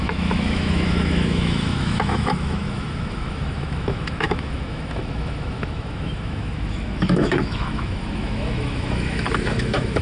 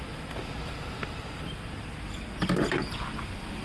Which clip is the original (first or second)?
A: second